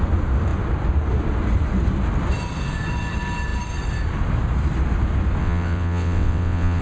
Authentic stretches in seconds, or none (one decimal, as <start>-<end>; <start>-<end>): 0.0-5.4